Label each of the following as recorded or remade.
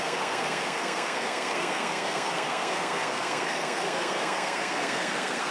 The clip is remade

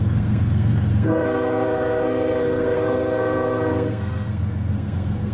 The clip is remade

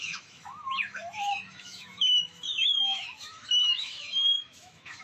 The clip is remade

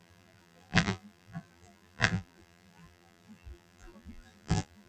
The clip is remade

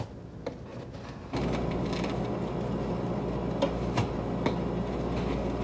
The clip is recorded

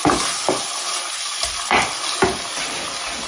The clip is recorded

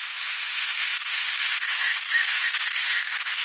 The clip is remade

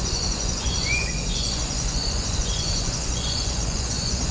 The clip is remade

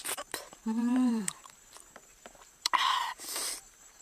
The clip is remade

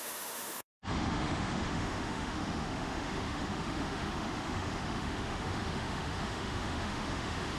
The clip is remade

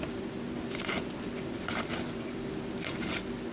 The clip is recorded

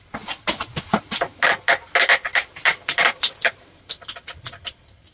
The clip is recorded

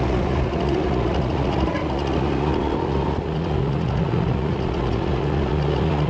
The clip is remade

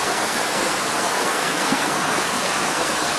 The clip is remade